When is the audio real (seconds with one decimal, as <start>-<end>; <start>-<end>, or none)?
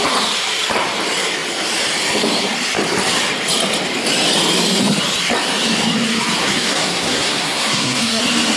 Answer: 0.0-6.4; 8.2-8.6